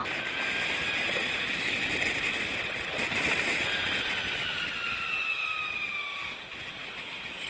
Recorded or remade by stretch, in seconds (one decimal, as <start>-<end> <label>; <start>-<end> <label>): 0.0-7.5 recorded